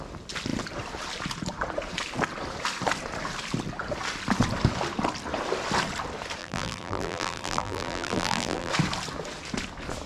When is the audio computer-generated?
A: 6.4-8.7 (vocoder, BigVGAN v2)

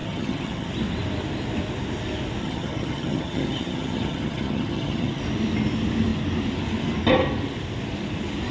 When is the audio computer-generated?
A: 0.0-0.7 (vocoder, HiFi-GAN); 2.4-5.2

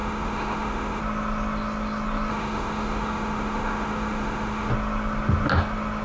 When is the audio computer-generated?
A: 0.0-1.0 (autoencoder, DAC-VAE); 2.3-4.7

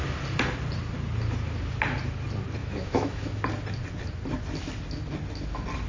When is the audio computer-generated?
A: 2.6-3.4 (autoencoder, DAC-VAE)